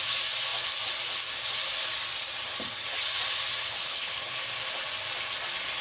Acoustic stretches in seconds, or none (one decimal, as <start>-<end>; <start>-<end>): 0.0-3.6; 4.4-5.8